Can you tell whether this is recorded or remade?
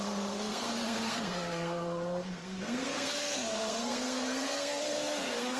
remade